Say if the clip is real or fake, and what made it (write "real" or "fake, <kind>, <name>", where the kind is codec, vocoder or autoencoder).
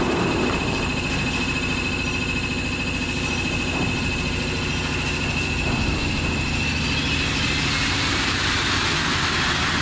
real